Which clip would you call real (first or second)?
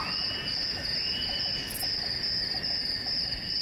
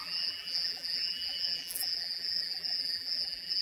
first